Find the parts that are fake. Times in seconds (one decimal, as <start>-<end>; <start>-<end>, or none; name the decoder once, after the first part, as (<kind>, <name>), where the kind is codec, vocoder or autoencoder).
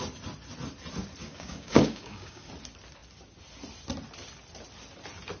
1.2-2.5 (codec, DAC)